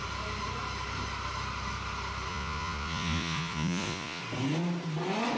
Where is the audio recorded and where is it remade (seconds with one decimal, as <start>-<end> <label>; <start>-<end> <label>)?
0.0-2.3 recorded; 2.3-4.2 remade; 4.2-5.4 recorded